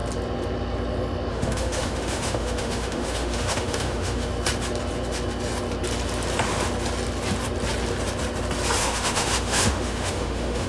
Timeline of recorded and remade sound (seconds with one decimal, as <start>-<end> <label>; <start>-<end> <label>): 0.0-1.3 recorded; 1.3-4.3 remade; 4.3-8.8 recorded; 8.8-10.7 remade